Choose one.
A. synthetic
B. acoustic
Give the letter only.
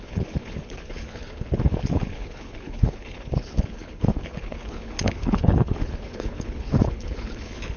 A